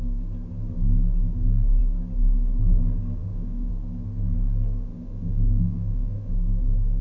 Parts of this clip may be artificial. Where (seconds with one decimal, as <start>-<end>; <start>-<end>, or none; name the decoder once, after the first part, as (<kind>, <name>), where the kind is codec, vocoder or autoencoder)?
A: 3.2-3.7 (autoencoder, DAC-VAE); 4.9-6.3